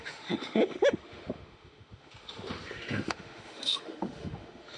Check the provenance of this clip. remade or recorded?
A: remade